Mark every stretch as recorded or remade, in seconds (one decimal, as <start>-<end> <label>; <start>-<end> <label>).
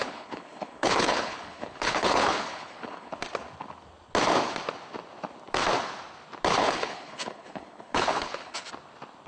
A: 0.0-3.2 remade; 3.2-6.6 recorded; 6.6-8.7 remade; 8.7-9.3 recorded